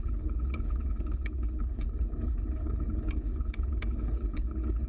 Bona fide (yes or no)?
no